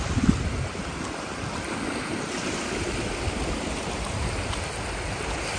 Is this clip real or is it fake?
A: real